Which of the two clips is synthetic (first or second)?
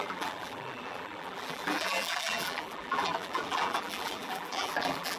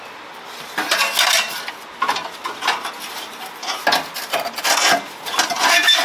first